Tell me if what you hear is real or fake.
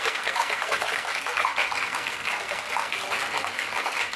fake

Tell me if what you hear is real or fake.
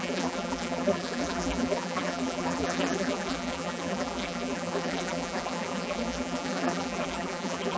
fake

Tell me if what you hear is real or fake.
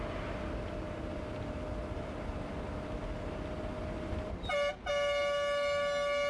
real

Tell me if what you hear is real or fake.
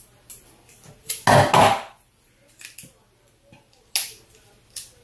real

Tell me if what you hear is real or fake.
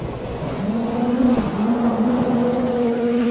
fake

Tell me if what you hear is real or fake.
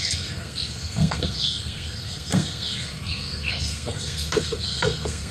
fake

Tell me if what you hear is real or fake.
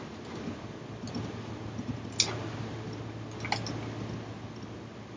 real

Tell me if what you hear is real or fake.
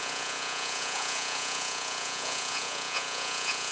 fake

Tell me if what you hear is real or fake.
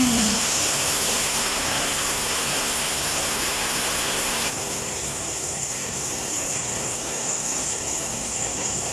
fake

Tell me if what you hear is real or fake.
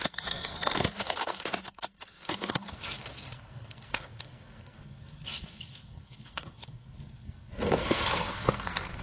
fake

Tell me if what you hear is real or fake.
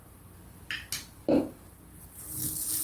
real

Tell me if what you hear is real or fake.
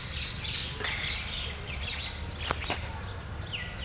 real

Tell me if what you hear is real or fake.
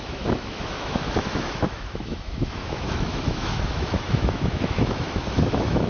fake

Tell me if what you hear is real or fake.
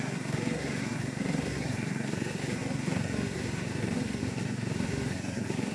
fake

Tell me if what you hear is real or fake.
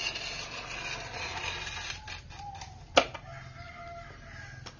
real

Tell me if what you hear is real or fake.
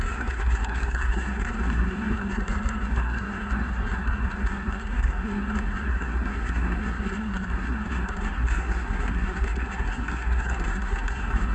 fake